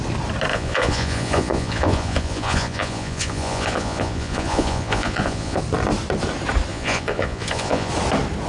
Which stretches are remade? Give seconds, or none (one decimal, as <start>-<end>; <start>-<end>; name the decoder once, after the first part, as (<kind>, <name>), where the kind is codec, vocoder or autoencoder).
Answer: 0.5-5.6 (vocoder, Vocos); 6.7-7.9